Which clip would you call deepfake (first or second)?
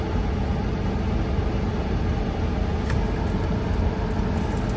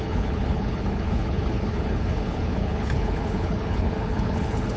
second